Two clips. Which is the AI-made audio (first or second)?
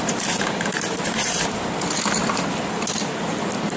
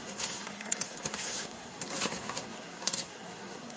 second